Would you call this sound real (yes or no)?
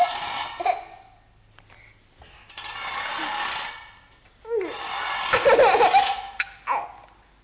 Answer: yes